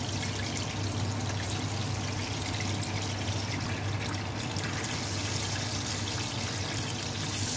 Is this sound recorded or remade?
recorded